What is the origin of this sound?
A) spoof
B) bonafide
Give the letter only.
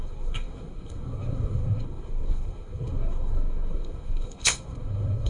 A